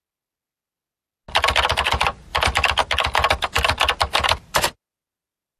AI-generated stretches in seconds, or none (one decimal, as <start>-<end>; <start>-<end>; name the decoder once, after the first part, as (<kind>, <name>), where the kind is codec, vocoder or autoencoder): none